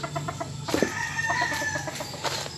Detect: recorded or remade remade